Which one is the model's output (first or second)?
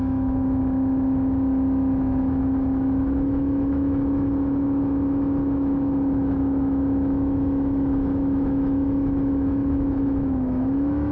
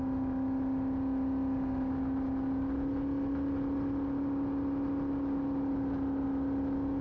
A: first